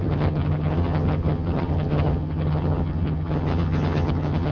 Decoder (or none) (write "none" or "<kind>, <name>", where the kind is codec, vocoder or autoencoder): vocoder, HiFi-GAN